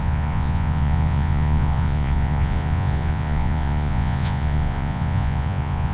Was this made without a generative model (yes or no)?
no